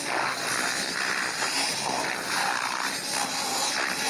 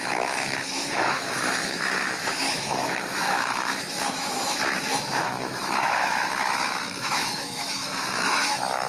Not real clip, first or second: second